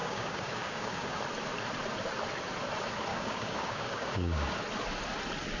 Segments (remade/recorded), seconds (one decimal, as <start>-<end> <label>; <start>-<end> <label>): 0.0-1.2 remade; 1.2-3.1 recorded; 3.1-4.6 remade; 4.6-5.6 recorded